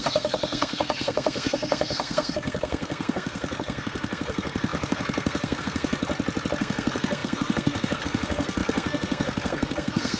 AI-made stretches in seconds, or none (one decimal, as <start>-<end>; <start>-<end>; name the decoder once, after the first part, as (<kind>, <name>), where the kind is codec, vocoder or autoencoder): 0.0-6.0 (codec, SNAC); 6.6-10.2